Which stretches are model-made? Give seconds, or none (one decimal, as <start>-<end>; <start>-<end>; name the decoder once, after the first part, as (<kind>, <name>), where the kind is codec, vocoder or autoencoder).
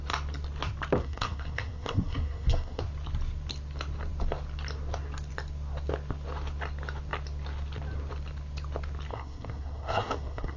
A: 1.0-2.8 (codec, SNAC); 9.1-10.6